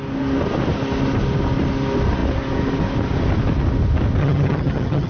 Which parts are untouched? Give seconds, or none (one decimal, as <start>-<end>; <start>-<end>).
0.0-4.2